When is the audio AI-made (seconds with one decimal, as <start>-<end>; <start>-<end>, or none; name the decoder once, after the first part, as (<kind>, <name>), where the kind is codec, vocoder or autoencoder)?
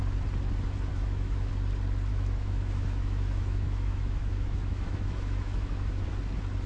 0.9-1.5 (autoencoder, DAC-VAE); 2.1-6.1